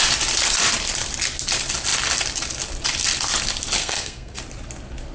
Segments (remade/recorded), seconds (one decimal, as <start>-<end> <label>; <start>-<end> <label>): 0.0-3.8 recorded; 3.8-4.4 remade; 4.4-5.1 recorded